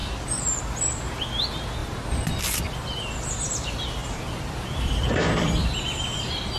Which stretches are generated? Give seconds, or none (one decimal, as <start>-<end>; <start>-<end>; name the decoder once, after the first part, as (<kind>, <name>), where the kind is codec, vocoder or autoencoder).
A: 4.0-5.8 (vocoder, BigVGAN v2)